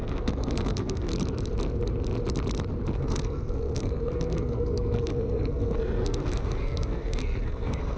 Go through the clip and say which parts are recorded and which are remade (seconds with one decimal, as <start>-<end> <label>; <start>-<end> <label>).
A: 0.0-1.1 remade; 1.1-2.9 recorded; 2.9-8.0 remade